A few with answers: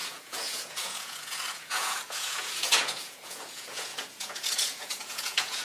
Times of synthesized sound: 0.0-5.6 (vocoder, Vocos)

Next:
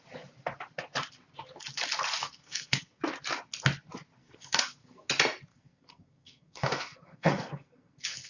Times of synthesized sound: 2.2-3.0 (codec, SNAC); 4.2-5.1; 5.5-8.3

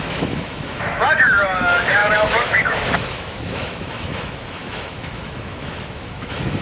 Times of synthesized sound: 0.0-6.6 (autoencoder, DAC-VAE)

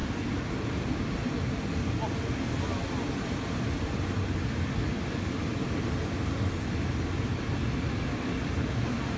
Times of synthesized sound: none